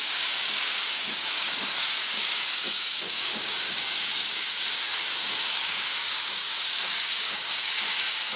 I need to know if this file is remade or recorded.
remade